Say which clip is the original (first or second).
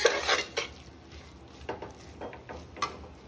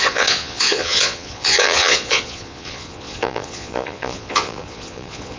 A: first